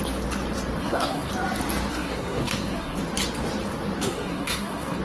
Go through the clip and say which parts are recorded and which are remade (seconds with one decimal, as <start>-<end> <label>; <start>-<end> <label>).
0.0-0.8 recorded; 0.8-1.3 remade; 1.3-1.9 recorded; 1.9-3.0 remade; 3.0-4.0 recorded; 4.0-5.0 remade